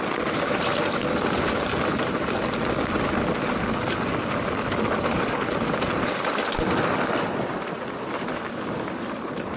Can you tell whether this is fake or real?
real